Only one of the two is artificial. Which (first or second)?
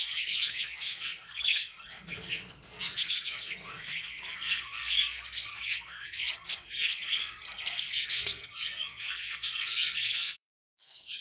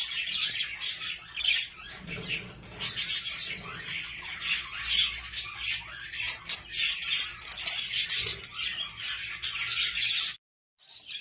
first